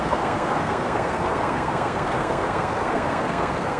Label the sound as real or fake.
fake